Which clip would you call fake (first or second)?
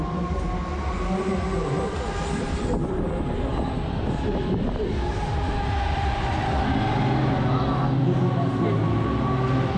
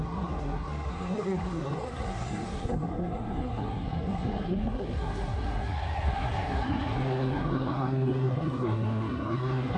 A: second